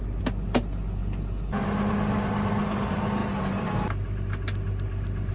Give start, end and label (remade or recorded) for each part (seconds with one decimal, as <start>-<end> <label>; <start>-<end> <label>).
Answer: 0.0-5.3 recorded